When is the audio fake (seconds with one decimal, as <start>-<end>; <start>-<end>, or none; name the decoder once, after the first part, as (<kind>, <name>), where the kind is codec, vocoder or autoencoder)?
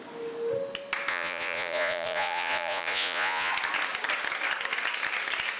1.1-3.5 (vocoder, Vocos)